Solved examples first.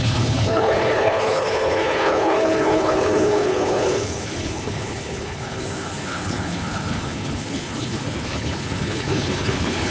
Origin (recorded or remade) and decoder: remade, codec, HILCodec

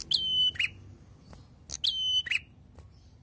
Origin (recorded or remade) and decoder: recorded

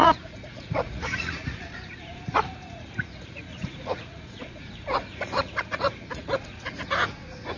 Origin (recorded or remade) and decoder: remade, vocoder, Vocos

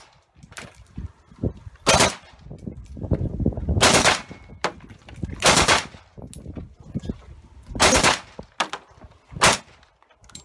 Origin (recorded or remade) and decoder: recorded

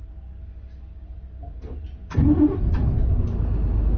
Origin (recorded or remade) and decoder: recorded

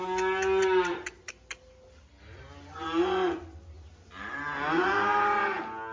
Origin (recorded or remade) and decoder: recorded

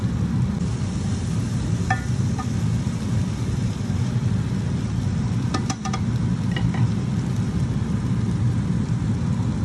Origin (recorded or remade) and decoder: remade, vocoder, BigVGAN v2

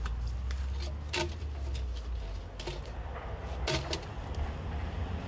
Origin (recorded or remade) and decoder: recorded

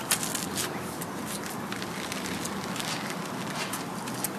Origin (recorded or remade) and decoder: recorded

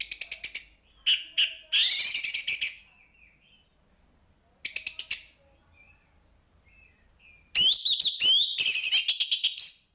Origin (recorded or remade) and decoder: recorded